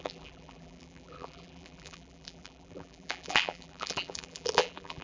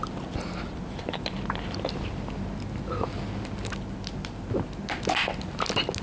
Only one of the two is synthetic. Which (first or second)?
first